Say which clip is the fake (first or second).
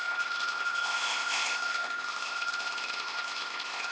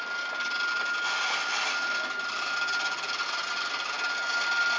first